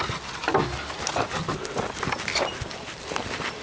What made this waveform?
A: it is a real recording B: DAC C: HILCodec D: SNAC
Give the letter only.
A